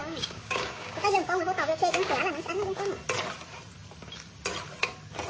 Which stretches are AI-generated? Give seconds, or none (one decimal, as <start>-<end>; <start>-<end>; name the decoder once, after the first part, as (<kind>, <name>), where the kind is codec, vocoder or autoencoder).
0.0-2.9 (codec, DAC)